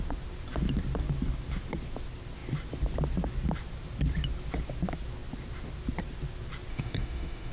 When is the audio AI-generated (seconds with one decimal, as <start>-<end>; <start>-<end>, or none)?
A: 6.7-7.5